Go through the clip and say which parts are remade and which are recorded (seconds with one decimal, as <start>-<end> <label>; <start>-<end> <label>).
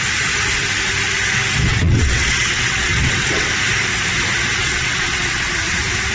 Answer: 0.0-1.7 recorded; 1.7-3.5 remade; 3.5-4.6 recorded; 4.6-5.5 remade; 5.5-6.1 recorded